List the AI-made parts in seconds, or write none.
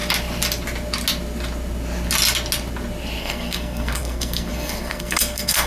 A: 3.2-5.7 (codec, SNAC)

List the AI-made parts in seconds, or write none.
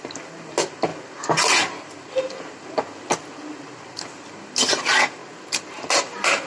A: none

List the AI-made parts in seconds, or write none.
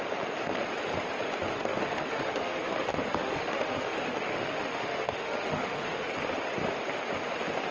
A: 1.5-6.1 (autoencoder, DAC-VAE)